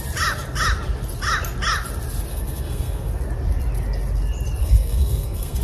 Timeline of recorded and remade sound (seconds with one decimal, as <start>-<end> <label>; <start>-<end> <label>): 0.0-2.3 recorded; 2.3-3.1 remade; 3.1-4.6 recorded; 4.6-5.6 remade